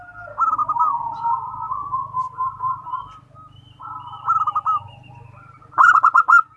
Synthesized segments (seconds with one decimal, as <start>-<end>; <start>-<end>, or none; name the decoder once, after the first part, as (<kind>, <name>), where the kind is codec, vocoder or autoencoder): none